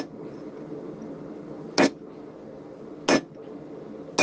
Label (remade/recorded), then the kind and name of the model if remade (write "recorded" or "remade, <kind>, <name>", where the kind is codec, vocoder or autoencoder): recorded